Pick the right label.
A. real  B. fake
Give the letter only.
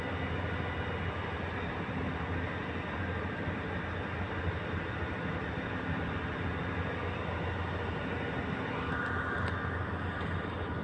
A